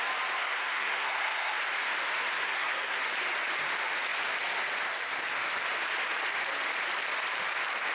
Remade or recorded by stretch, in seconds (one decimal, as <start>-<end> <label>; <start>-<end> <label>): 0.0-0.4 recorded; 0.4-1.5 remade; 1.5-2.4 recorded; 2.4-3.0 remade; 3.0-7.9 recorded